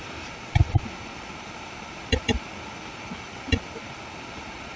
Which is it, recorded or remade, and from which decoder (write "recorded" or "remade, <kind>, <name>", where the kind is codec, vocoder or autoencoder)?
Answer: recorded